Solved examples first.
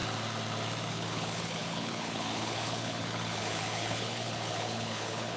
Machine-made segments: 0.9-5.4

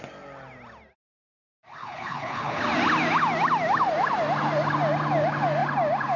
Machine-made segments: 1.8-2.6

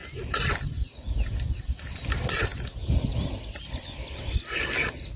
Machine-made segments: none

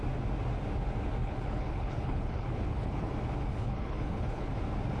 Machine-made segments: 1.2-3.1; 3.5-4.5

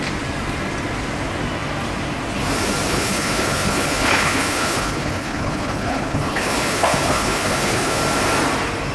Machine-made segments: 2.9-8.0

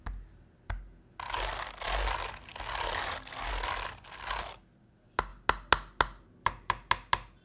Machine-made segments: none

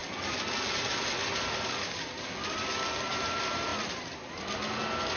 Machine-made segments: none

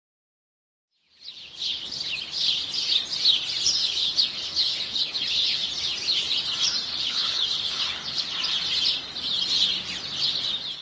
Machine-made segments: 3.8-5.7; 6.9-8.2